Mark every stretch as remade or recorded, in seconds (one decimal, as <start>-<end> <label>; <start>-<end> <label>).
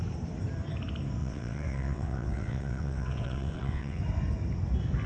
0.0-1.2 recorded; 1.2-4.0 remade; 4.0-5.1 recorded